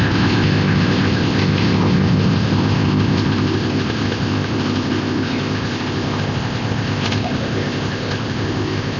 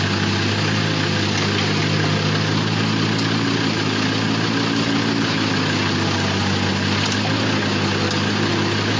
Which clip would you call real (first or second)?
second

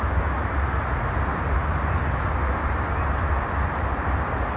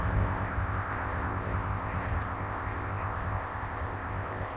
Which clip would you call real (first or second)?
first